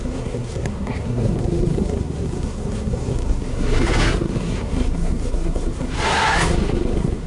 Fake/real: fake